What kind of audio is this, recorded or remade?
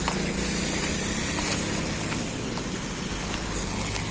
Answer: recorded